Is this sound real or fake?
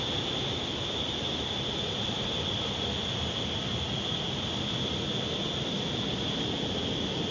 real